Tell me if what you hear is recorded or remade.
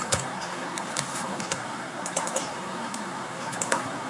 remade